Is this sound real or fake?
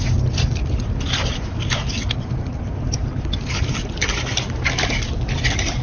real